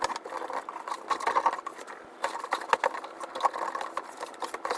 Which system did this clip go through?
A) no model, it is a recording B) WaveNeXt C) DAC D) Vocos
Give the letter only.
A